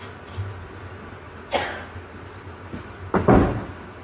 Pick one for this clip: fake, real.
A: real